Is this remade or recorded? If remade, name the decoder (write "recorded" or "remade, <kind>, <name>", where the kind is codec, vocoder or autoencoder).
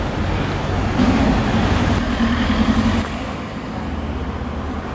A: recorded